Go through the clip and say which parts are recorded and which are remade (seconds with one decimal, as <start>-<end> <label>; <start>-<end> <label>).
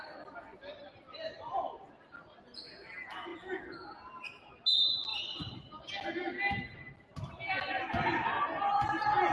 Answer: 0.0-0.5 recorded; 0.5-1.7 remade; 1.7-9.3 recorded